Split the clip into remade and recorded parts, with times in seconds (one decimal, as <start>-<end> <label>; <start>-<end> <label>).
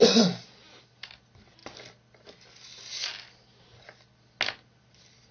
0.0-5.3 recorded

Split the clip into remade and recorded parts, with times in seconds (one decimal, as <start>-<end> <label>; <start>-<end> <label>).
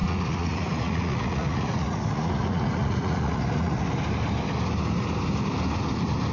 0.0-3.8 remade; 3.8-6.3 recorded